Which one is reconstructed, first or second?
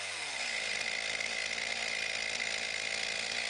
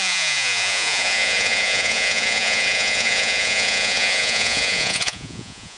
second